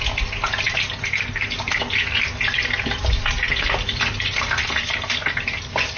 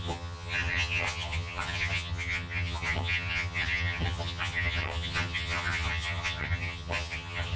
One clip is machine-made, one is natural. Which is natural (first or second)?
first